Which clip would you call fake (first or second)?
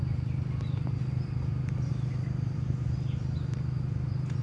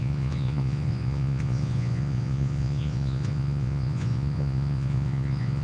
second